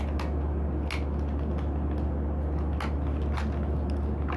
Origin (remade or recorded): recorded